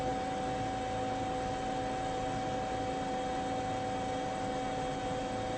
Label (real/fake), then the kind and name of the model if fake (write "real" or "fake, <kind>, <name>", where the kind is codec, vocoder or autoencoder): real